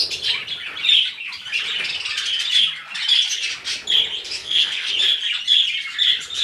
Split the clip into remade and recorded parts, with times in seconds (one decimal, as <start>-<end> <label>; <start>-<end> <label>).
0.0-4.4 recorded; 4.4-4.9 remade; 4.9-6.4 recorded